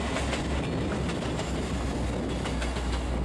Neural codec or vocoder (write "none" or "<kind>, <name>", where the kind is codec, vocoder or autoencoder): none